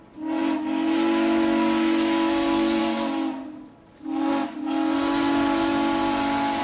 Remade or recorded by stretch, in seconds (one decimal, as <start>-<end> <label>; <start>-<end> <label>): 0.0-6.6 recorded